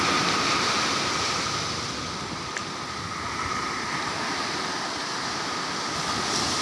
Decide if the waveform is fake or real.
real